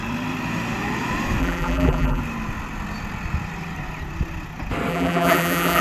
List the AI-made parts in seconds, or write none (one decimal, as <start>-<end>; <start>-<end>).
1.4-2.2; 4.9-5.8